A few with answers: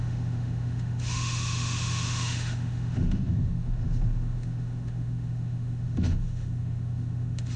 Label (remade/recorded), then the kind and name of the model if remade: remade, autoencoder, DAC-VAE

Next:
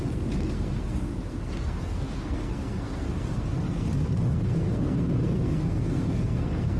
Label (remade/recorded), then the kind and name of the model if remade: remade, codec, SNAC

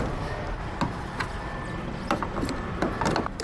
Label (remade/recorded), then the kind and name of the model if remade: recorded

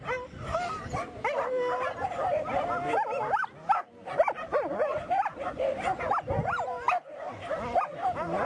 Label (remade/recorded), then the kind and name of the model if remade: recorded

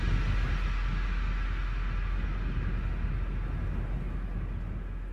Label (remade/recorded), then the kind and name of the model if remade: recorded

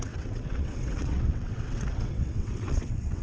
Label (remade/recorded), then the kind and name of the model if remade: remade, vocoder, WaveNeXt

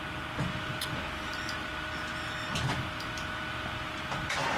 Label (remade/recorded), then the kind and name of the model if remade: recorded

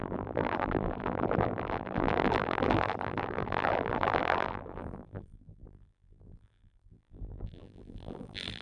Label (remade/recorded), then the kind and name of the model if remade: remade, vocoder, BigVGAN v2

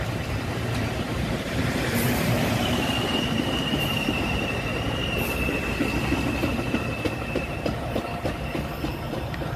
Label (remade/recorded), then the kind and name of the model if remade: remade, vocoder, BigVGAN v2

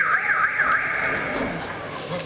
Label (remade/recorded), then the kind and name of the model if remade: recorded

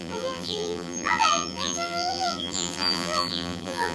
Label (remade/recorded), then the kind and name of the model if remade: remade, vocoder, BigVGAN v2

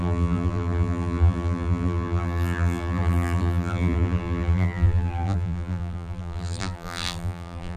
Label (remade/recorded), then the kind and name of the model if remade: remade, vocoder, BigVGAN v2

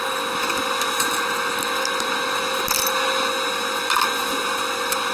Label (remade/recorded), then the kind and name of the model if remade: recorded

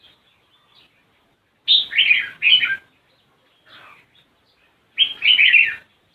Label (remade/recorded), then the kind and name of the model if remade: recorded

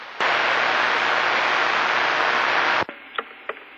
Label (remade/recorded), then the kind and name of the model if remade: recorded